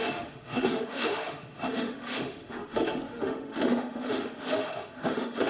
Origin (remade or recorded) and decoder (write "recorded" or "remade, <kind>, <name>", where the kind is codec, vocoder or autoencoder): remade, autoencoder, DAC-VAE